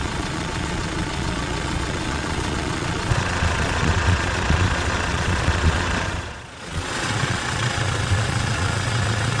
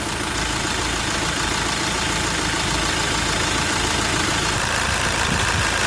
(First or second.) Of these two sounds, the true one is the second